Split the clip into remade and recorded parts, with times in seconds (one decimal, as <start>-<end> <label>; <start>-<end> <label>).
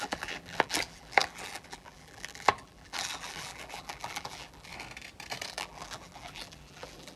0.0-4.7 remade; 4.7-5.5 recorded; 5.5-7.2 remade